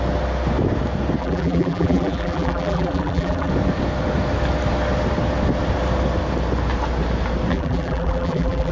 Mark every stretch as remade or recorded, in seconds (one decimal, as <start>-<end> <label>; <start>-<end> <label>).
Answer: 0.0-1.2 recorded; 1.2-3.5 remade; 3.5-7.5 recorded; 7.5-8.7 remade